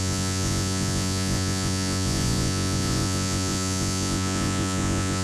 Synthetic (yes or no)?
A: yes